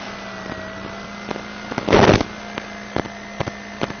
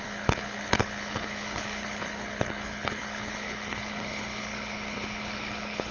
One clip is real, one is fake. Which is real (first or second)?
first